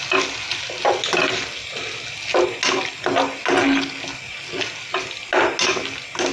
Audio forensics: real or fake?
real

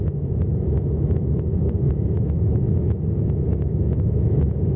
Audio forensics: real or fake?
fake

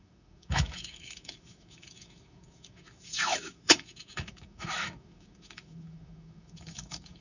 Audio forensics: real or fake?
fake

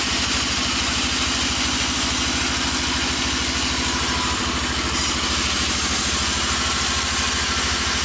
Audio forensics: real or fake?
real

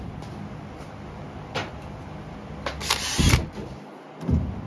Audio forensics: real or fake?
real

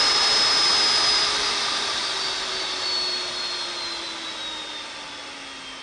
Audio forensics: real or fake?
real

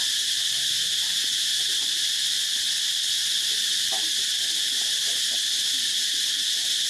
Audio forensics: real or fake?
real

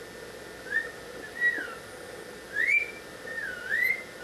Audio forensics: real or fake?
real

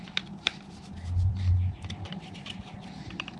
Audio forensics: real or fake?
real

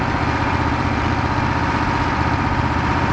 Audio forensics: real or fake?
real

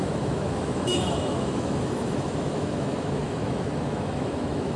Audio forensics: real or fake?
fake